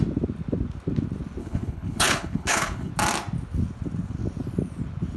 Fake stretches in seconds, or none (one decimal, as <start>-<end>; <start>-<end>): 1.4-2.9